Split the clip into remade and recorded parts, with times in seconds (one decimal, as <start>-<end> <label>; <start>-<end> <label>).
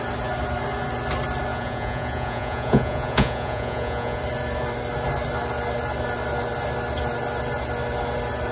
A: 0.0-1.5 recorded; 1.5-4.2 remade; 4.2-8.5 recorded